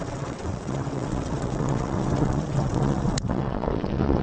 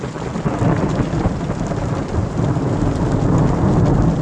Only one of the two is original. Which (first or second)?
second